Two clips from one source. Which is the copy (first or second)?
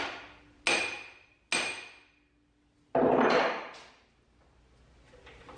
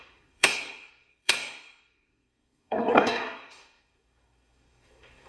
second